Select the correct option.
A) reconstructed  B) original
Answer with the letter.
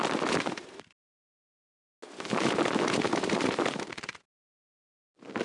B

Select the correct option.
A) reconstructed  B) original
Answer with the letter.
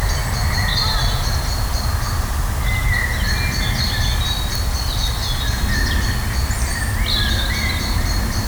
B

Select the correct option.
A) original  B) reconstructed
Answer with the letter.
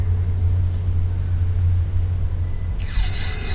A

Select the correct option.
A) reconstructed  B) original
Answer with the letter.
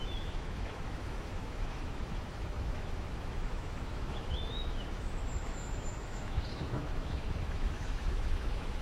A